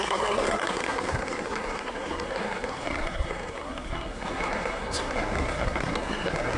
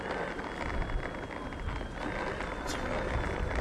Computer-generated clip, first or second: first